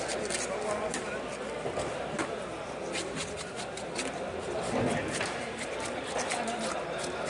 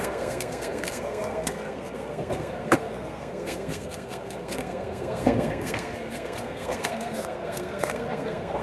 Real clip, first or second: first